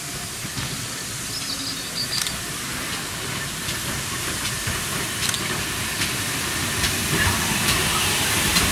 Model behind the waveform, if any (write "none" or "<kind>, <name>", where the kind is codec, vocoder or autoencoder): none